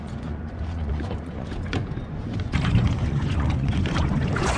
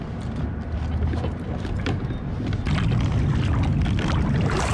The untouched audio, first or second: second